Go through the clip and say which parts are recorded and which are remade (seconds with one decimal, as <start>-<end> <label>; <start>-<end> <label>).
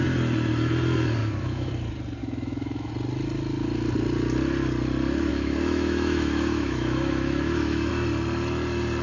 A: 0.0-1.2 recorded; 1.2-1.7 remade; 1.7-2.2 recorded; 2.2-2.9 remade; 2.9-5.3 recorded; 5.3-7.9 remade; 7.9-9.0 recorded